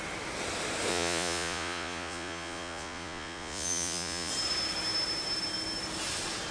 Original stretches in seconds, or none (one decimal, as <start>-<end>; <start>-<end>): 0.0-0.9; 4.3-6.5